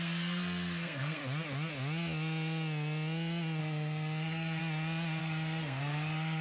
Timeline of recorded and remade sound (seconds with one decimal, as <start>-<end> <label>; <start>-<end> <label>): 0.0-1.2 remade; 1.2-3.6 recorded; 3.6-4.6 remade; 4.6-5.2 recorded; 5.2-6.4 remade